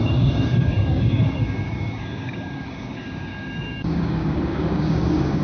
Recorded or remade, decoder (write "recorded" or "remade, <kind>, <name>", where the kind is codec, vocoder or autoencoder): remade, codec, DAC